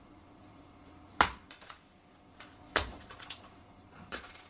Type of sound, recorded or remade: remade